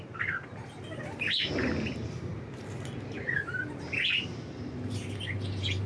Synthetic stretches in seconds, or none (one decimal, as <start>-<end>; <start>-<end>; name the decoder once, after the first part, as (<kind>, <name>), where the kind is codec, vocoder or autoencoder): none